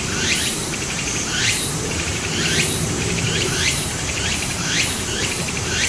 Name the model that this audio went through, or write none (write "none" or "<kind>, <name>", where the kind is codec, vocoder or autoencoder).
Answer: vocoder, BigVGAN v2